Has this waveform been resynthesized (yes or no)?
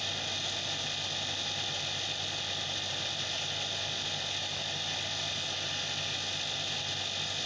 no